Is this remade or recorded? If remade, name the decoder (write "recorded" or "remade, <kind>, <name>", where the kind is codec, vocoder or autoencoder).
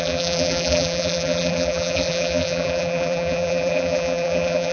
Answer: remade, vocoder, BigVGAN v2